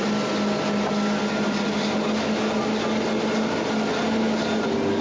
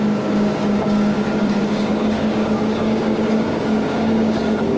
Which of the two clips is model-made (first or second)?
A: second